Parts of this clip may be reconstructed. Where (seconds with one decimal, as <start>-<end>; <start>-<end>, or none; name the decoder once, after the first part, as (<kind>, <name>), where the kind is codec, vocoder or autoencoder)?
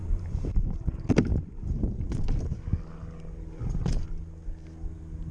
0.0-1.7 (vocoder, BigVGAN v2)